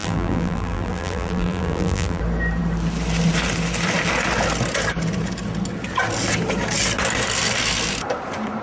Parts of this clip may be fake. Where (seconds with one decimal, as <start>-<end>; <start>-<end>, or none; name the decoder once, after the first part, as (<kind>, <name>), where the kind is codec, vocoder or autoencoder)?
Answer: 0.0-2.2 (vocoder, BigVGAN v2)